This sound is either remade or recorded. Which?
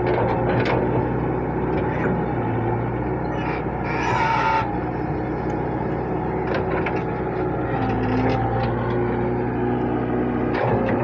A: recorded